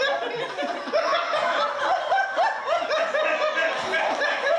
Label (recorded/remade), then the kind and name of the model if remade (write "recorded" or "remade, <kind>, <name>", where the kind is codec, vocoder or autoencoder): recorded